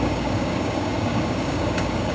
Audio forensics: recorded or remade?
remade